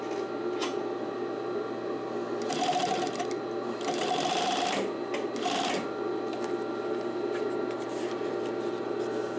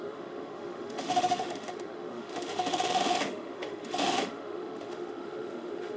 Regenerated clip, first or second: second